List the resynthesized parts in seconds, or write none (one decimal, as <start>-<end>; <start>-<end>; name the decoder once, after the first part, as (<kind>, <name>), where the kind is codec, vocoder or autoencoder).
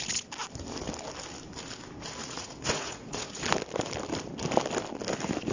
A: 2.2-3.4 (vocoder, Vocos)